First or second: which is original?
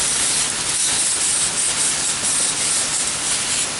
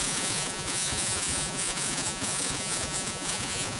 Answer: first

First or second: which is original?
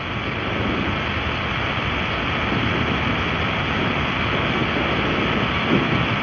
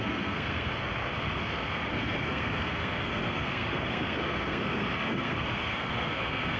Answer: first